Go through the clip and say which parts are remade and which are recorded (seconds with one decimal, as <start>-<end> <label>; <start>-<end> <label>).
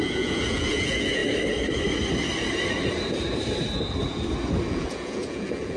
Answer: 0.0-1.2 remade; 1.2-4.7 recorded; 4.7-5.8 remade